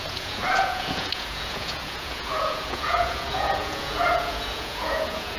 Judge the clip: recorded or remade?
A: remade